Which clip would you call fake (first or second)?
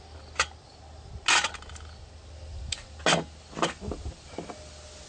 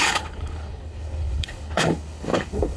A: second